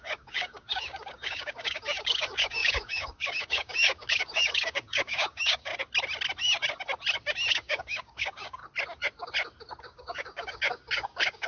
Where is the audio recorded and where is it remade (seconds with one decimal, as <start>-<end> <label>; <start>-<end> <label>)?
0.0-5.7 remade; 5.7-7.5 recorded; 7.5-8.6 remade; 8.6-9.8 recorded; 9.8-11.5 remade